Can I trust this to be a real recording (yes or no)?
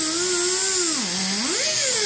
yes